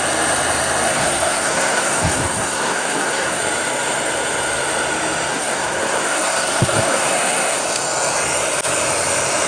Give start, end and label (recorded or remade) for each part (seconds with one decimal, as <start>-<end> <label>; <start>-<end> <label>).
0.0-0.9 recorded; 0.9-3.4 remade; 3.4-5.3 recorded; 5.3-7.6 remade; 7.6-9.5 recorded